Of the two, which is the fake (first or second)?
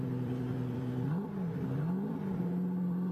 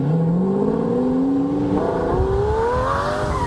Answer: first